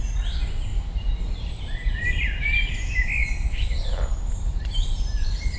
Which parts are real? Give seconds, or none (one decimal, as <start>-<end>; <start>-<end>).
0.0-0.7; 2.7-3.2